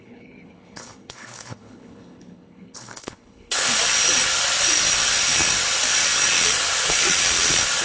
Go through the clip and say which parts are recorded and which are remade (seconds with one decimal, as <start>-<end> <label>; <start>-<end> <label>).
0.0-3.7 remade; 3.7-7.8 recorded